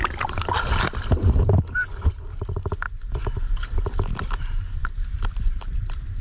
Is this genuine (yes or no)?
yes